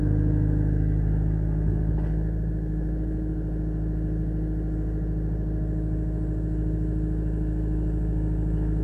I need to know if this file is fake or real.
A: real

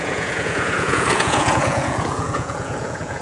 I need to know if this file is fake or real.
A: fake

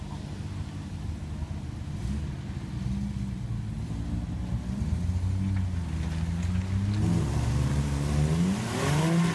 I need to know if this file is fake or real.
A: real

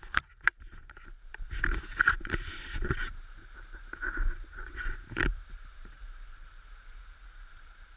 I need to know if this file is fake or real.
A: fake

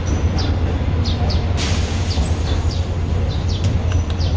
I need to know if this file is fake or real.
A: real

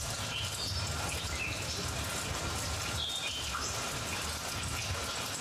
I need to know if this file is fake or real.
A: real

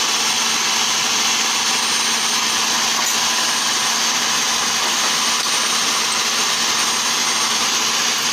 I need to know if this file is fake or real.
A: real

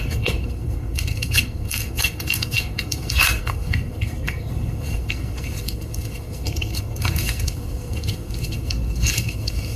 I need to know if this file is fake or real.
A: fake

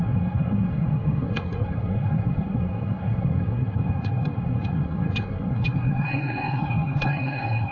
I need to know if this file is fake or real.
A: fake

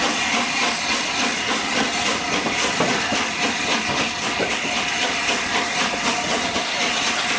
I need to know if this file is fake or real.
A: real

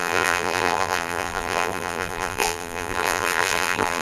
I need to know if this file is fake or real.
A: fake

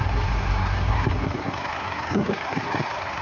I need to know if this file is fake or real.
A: fake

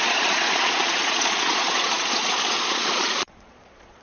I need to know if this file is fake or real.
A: fake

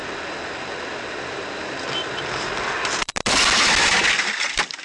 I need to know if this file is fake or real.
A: real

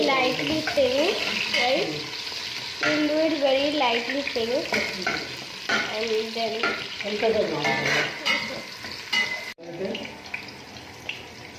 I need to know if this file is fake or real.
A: real